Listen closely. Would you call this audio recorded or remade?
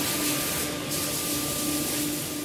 recorded